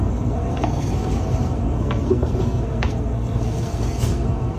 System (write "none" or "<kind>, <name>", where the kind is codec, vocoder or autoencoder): codec, SNAC